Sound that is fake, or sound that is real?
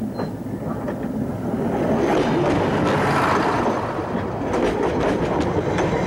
real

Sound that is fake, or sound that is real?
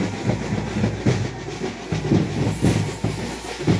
real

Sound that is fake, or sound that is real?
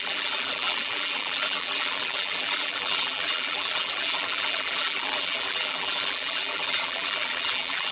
fake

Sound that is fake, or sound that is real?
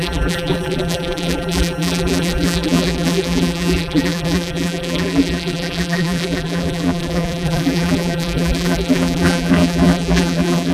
fake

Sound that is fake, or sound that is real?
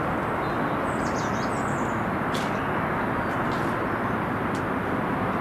real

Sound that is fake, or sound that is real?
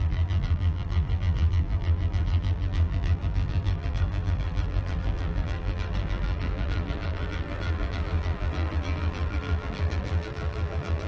fake